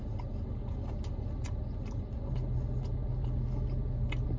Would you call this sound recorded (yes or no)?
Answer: yes